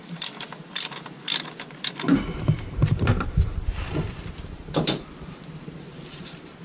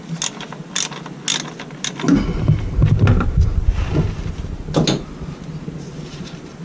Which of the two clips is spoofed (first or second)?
first